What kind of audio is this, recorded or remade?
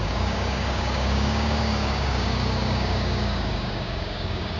remade